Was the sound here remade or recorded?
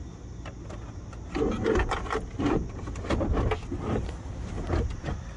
recorded